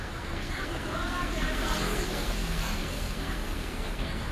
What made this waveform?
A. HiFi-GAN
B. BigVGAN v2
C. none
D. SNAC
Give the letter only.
D